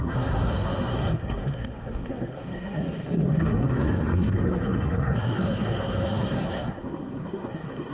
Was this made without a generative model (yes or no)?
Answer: no